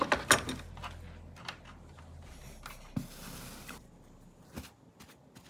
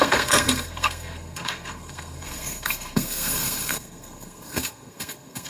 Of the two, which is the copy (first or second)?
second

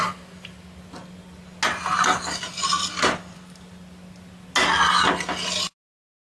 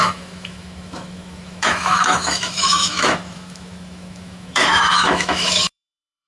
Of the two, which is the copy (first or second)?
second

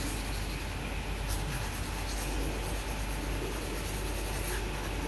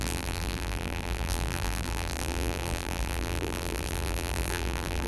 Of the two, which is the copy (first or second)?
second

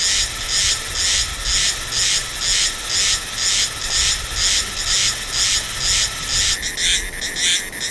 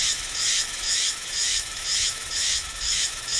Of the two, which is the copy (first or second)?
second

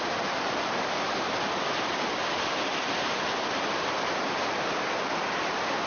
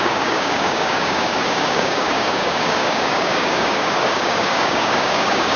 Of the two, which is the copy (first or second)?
second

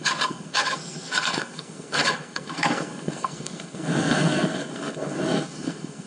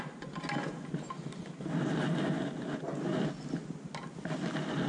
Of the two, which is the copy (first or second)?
first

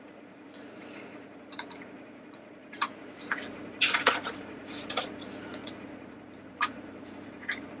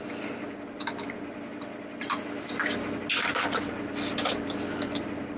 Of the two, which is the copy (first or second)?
first